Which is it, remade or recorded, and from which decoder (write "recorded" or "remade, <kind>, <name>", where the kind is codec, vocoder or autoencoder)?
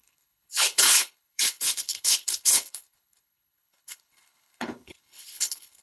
remade, codec, HILCodec